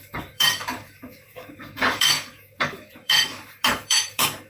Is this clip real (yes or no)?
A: no